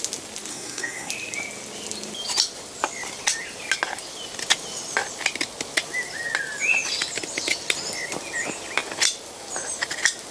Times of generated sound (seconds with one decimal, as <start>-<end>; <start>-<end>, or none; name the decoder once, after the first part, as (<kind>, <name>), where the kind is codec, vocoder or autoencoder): 0.5-1.1 (codec, SNAC)